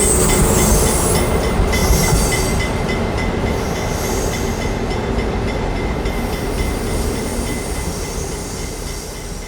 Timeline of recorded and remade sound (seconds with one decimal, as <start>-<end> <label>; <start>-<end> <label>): 0.0-9.5 recorded